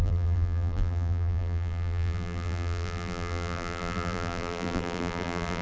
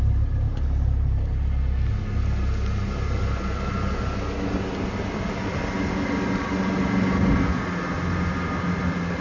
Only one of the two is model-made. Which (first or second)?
first